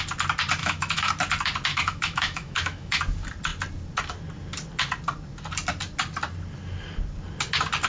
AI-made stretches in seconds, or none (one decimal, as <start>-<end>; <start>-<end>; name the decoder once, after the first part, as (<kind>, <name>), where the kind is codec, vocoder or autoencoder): 0.6-1.1 (autoencoder, DAC-VAE); 1.7-3.0